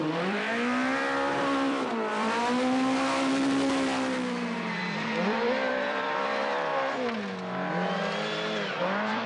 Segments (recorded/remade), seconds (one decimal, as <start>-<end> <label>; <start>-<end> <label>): 0.0-6.7 remade; 6.7-8.3 recorded; 8.3-9.3 remade